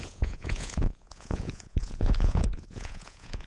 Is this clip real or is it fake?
fake